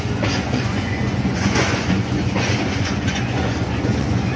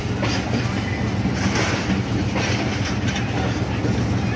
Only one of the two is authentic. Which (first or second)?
second